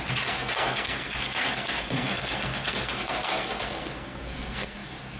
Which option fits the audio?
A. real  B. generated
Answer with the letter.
B